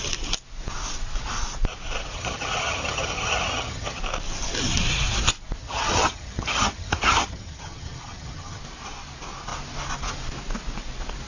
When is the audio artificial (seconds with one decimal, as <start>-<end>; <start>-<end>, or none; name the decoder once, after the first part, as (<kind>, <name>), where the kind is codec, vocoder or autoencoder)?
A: 2.1-4.0 (vocoder, HiFi-GAN); 5.6-8.6